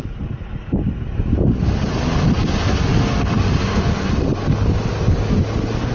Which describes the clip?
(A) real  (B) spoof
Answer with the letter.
A